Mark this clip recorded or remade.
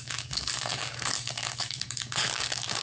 remade